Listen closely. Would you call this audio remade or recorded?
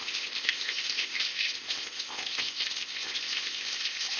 remade